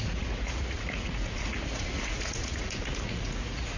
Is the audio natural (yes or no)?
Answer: no